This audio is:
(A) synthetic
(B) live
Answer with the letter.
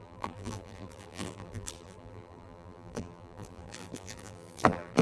A